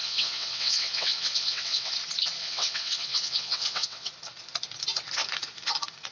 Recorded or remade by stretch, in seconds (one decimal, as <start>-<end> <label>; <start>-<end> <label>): 0.0-1.9 remade; 1.9-2.4 recorded; 2.4-4.1 remade; 4.1-6.1 recorded